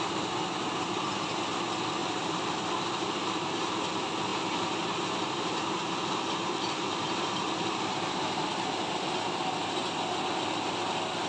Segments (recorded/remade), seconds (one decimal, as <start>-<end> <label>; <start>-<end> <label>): 0.0-2.0 recorded; 2.0-3.5 remade; 3.5-4.3 recorded; 4.3-9.1 remade; 9.1-11.3 recorded